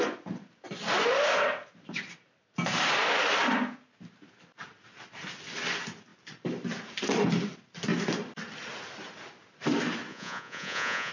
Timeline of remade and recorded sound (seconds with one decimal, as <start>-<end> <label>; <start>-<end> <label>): 0.0-10.1 recorded; 10.1-11.1 remade